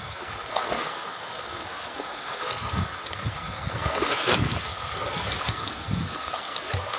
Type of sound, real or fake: fake